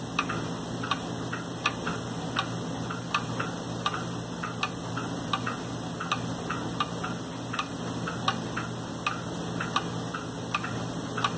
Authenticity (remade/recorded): recorded